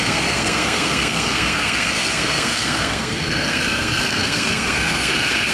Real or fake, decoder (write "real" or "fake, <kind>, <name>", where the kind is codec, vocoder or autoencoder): fake, codec, SNAC